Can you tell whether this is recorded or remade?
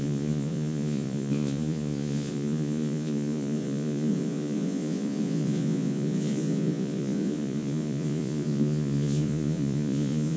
remade